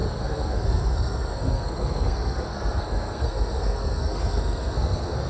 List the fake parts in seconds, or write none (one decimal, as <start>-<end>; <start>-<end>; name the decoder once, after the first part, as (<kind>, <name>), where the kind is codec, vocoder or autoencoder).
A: 0.0-5.3 (codec, SNAC)